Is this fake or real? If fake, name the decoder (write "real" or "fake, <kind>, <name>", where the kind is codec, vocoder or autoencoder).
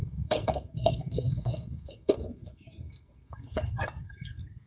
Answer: fake, codec, SNAC